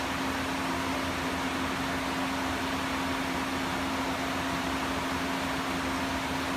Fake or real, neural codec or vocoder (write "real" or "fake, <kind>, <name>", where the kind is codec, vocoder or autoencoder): real